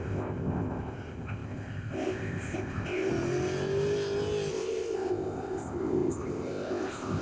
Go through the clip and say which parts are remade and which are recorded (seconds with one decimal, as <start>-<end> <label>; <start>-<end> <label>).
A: 0.0-3.1 remade; 3.1-4.5 recorded; 4.5-7.2 remade